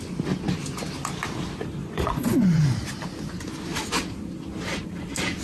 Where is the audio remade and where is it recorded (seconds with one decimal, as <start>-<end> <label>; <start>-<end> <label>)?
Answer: 0.0-1.8 recorded; 1.8-2.6 remade; 2.6-5.4 recorded